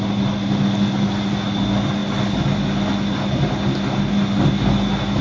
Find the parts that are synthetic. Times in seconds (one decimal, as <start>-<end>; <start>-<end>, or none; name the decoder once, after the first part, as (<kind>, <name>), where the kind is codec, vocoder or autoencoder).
none